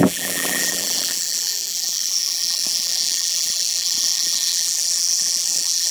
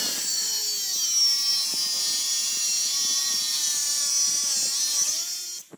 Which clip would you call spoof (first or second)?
first